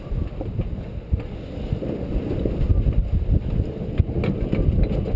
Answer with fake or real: real